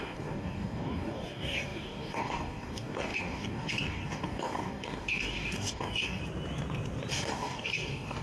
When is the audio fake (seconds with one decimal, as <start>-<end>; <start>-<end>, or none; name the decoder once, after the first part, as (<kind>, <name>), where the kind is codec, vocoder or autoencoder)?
0.0-6.2 (codec, DAC); 7.1-8.2